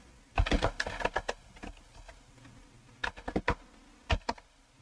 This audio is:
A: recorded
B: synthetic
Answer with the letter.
A